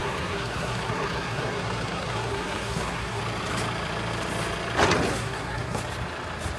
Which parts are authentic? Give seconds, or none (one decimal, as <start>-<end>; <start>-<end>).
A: 3.2-5.1; 5.8-6.6